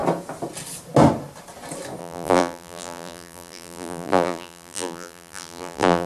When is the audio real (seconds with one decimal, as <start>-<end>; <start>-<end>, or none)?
0.0-2.0